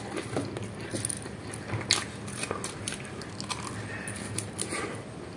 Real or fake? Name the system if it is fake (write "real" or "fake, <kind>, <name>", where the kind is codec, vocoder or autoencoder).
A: real